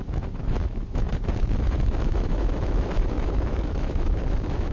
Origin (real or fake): fake